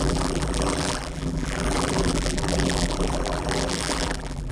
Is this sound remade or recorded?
remade